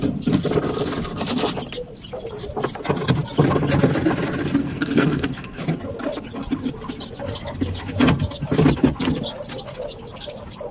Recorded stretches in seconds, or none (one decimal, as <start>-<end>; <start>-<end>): 0.0-4.6; 5.6-10.7